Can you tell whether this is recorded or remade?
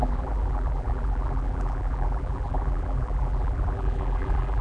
remade